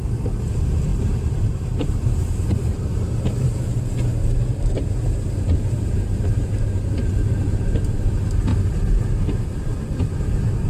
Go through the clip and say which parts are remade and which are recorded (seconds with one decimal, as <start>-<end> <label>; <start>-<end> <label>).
0.0-0.9 recorded; 0.9-2.2 remade; 2.2-3.4 recorded; 3.4-7.1 remade; 7.1-8.5 recorded; 8.5-9.6 remade; 9.6-10.7 recorded